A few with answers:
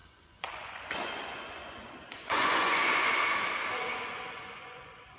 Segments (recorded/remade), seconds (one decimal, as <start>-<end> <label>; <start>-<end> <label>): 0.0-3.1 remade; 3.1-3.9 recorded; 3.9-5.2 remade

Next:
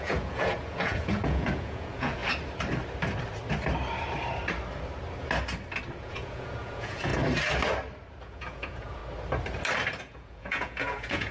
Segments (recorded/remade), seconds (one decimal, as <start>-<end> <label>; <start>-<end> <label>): 0.0-2.2 remade; 2.2-6.0 recorded; 6.0-7.1 remade; 7.1-8.2 recorded; 8.2-9.0 remade; 9.0-10.0 recorded; 10.0-11.3 remade

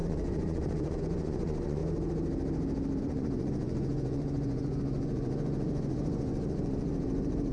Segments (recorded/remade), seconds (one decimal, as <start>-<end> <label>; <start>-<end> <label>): 0.0-1.8 remade; 1.8-3.0 recorded; 3.0-7.5 remade

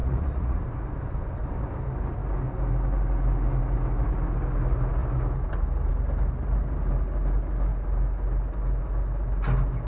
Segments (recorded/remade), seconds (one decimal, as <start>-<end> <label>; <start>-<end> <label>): 0.0-0.6 remade; 0.6-9.9 recorded

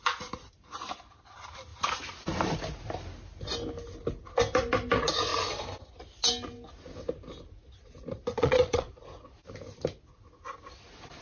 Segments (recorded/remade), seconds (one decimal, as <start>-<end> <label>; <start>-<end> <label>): 0.0-8.3 recorded; 8.3-8.9 remade; 8.9-11.2 recorded

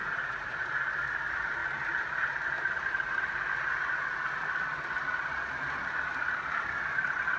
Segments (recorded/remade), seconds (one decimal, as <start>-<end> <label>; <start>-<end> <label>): 0.0-0.7 remade; 0.7-7.4 recorded

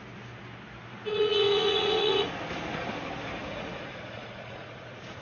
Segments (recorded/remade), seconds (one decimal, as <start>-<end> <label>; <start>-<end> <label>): 0.0-1.1 recorded; 1.1-2.3 remade; 2.3-3.4 recorded; 3.4-5.2 remade